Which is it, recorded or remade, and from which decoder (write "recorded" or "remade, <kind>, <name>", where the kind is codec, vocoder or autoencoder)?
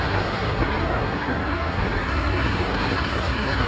remade, codec, SNAC